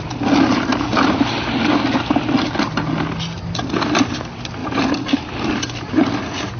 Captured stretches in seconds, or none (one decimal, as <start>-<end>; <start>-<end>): 0.0-6.6